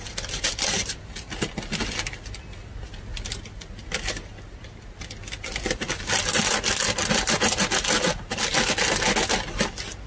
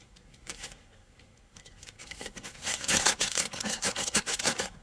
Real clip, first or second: first